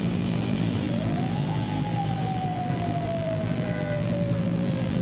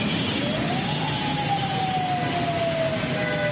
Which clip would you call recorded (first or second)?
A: second